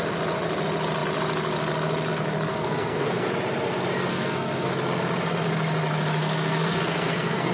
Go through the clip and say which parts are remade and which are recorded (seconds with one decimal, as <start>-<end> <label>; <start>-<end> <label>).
0.0-2.5 recorded; 2.5-3.3 remade; 3.3-4.1 recorded; 4.1-4.7 remade; 4.7-6.2 recorded; 6.2-7.5 remade